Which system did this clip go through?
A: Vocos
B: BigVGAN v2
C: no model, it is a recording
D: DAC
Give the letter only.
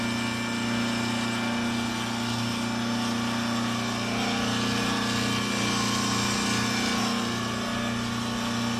C